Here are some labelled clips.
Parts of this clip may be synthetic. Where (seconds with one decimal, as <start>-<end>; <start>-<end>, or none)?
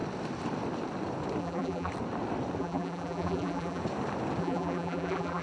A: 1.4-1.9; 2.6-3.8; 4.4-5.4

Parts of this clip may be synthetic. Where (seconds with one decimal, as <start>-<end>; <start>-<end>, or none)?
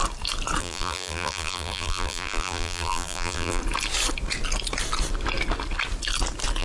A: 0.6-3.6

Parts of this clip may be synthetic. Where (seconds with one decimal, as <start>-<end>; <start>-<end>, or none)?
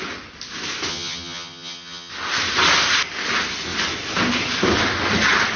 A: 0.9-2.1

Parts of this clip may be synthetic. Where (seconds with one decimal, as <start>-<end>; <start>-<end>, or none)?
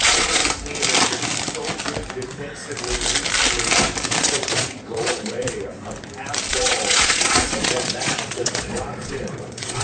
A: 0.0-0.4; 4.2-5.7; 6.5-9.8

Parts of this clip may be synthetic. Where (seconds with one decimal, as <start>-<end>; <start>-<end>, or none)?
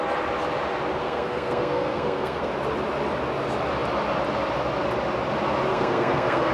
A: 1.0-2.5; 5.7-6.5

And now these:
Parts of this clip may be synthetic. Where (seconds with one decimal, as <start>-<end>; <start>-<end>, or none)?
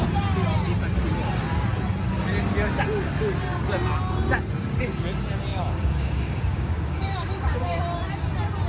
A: 5.5-7.8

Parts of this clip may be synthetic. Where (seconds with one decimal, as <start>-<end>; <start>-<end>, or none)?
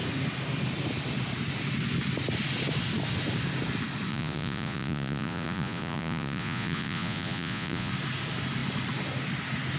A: 4.1-7.9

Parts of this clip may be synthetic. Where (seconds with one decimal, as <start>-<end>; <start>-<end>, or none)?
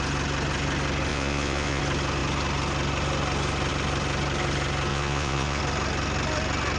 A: 1.1-1.8; 4.9-5.6